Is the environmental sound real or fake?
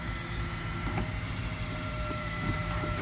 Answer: fake